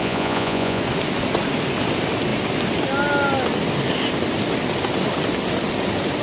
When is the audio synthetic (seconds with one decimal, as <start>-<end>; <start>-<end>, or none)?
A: 0.0-0.8